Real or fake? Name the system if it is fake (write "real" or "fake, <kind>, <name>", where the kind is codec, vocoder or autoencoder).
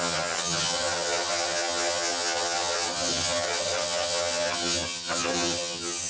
fake, vocoder, HiFi-GAN